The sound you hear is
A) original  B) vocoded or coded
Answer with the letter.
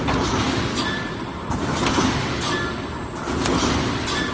A